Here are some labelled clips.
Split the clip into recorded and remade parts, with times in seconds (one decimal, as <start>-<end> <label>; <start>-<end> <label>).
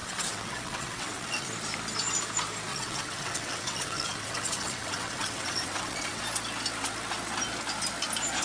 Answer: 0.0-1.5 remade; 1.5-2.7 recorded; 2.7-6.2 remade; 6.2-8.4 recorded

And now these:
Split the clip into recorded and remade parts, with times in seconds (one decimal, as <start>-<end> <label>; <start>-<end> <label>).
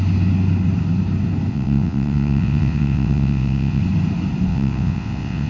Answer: 0.0-1.5 recorded; 1.5-3.8 remade; 3.8-4.5 recorded; 4.5-5.5 remade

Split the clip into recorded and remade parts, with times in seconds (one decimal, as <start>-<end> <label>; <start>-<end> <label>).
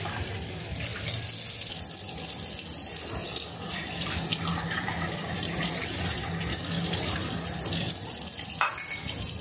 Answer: 0.0-9.4 recorded